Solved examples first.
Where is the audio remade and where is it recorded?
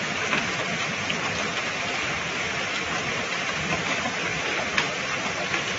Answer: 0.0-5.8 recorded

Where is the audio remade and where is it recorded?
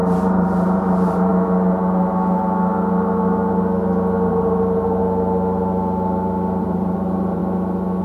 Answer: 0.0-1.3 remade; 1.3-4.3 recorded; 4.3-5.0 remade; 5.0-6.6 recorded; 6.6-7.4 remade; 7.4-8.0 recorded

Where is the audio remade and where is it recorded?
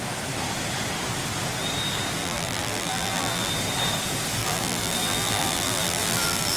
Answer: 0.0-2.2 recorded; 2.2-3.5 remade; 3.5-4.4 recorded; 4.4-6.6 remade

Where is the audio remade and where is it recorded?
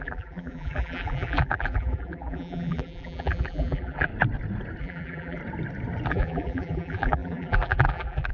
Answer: 0.0-4.1 remade; 4.1-4.8 recorded; 4.8-5.4 remade; 5.4-6.1 recorded; 6.1-8.3 remade